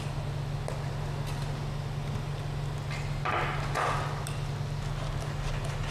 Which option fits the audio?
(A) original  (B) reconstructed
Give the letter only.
A